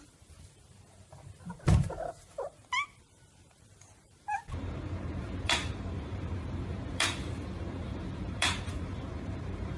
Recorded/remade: remade